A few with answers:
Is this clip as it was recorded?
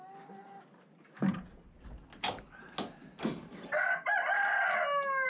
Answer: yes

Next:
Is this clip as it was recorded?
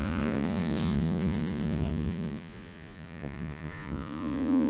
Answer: no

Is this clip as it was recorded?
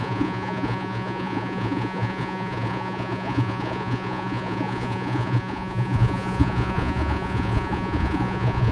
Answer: no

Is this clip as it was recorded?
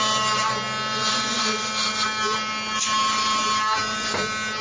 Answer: yes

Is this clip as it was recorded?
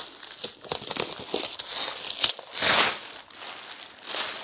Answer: yes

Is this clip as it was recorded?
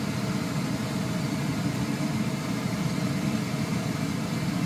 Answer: yes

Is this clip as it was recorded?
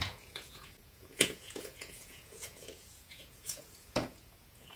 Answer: no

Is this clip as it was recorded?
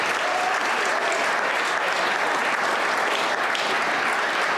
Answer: yes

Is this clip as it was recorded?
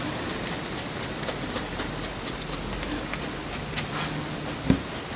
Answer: yes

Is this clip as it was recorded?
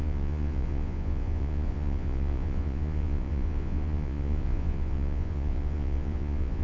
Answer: no